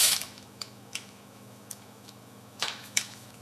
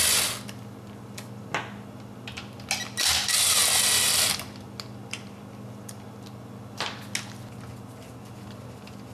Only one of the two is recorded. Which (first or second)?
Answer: second